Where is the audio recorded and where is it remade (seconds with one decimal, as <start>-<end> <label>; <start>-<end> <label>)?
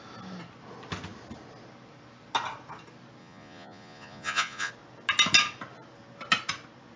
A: 0.0-3.2 recorded; 3.2-4.7 remade; 4.7-7.0 recorded